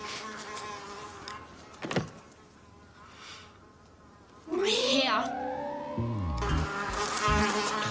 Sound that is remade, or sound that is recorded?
recorded